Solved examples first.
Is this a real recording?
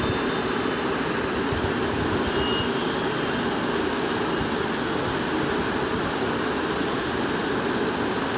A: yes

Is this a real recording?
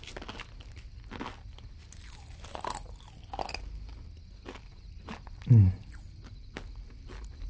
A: yes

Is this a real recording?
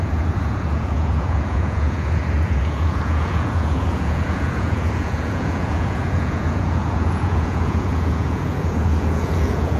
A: no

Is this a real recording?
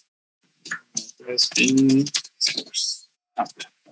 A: no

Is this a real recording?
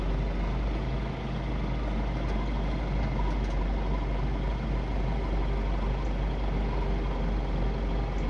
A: yes